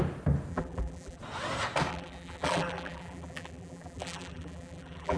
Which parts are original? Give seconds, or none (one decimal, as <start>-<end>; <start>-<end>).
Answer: 0.0-0.5; 1.2-1.9

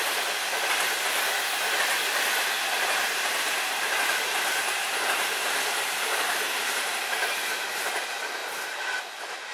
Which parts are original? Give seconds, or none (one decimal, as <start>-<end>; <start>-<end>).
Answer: 0.0-4.6; 7.9-8.4; 9.0-9.5

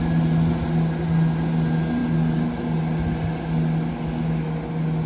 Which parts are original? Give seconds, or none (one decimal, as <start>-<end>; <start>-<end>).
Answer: 0.0-5.1

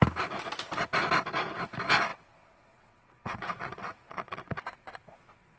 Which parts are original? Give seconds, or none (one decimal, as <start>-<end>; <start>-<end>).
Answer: 0.0-2.1

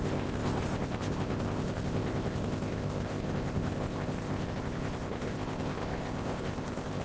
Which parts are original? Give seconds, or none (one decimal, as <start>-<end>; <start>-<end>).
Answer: none

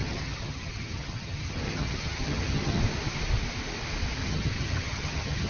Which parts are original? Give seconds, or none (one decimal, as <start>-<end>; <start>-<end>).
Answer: 2.8-4.2

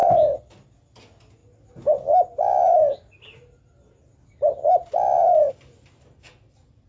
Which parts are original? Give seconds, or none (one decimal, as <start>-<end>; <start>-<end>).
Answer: 0.0-6.9

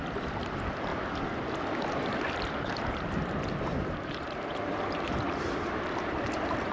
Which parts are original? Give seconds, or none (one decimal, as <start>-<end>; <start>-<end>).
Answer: 0.9-2.1